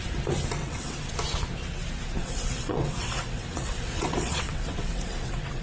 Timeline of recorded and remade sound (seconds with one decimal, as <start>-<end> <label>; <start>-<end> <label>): 0.0-0.6 recorded; 0.6-1.1 remade; 1.1-2.2 recorded; 2.2-5.6 remade